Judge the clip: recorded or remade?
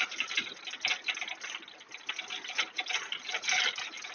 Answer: recorded